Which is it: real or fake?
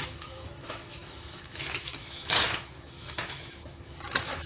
fake